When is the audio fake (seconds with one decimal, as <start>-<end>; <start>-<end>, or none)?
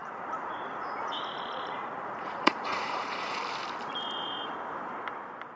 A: 0.0-3.4